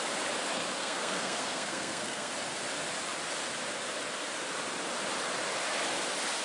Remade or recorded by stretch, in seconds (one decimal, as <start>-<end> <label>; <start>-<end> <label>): 0.0-0.8 recorded; 0.8-2.3 remade; 2.3-6.4 recorded